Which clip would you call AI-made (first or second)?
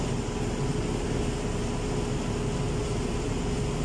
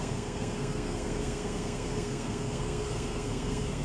second